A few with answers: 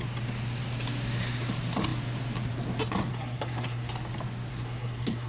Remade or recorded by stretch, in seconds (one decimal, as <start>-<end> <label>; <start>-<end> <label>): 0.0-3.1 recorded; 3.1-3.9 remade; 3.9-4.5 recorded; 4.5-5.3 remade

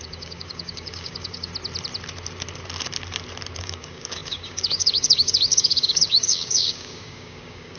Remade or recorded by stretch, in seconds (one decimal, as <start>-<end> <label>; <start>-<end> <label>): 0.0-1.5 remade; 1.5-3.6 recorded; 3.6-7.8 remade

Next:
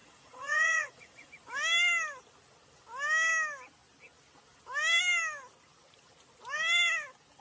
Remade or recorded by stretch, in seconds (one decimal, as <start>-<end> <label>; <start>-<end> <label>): 0.0-1.3 remade; 1.3-7.4 recorded